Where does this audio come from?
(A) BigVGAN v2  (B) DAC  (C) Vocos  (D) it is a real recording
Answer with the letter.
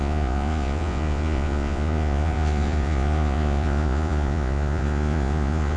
C